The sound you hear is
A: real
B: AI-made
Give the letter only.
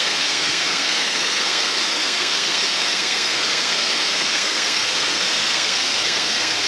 B